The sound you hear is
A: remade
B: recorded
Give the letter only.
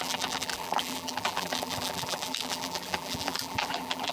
A